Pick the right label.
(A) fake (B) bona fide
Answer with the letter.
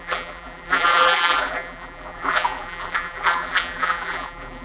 A